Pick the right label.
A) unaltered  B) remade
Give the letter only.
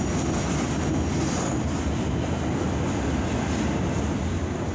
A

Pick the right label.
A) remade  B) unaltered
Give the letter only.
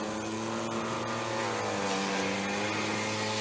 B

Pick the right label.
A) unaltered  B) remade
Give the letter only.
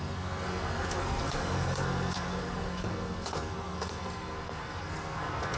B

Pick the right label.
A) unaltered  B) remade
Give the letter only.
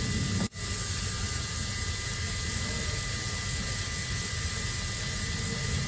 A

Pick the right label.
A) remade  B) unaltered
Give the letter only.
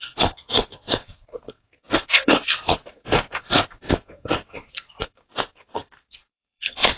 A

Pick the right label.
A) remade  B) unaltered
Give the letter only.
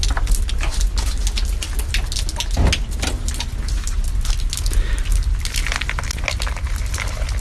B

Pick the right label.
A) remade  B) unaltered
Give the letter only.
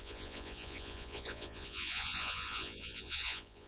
A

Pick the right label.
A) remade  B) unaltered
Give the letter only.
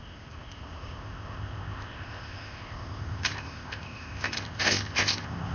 A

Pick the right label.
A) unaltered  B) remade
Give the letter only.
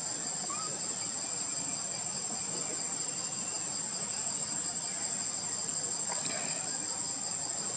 A